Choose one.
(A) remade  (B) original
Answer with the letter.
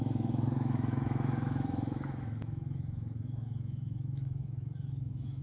A